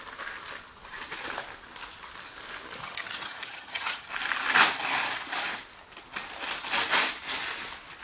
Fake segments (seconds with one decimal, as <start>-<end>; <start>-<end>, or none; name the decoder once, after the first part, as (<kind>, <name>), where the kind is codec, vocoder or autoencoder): 2.8-4.1 (vocoder, HiFi-GAN)